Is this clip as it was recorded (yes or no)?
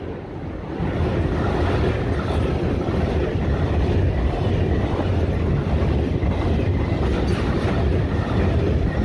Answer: yes